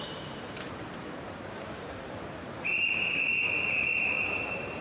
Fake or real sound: fake